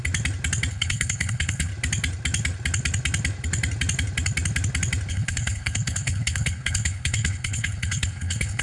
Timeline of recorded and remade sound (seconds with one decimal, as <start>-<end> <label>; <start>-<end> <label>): 0.0-0.7 recorded; 0.7-1.7 remade; 1.7-5.1 recorded; 5.1-8.6 remade